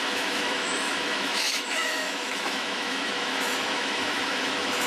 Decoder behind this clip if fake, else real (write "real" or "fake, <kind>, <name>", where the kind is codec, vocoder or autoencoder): fake, autoencoder, DAC-VAE